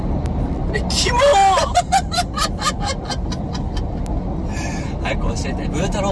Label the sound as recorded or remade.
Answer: recorded